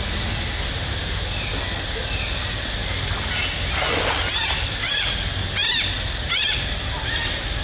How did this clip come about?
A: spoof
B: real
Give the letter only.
B